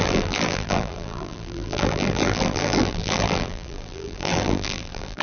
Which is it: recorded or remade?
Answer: remade